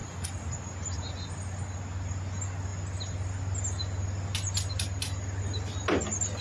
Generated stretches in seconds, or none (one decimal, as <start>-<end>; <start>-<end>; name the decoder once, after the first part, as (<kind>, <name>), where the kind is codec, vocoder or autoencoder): none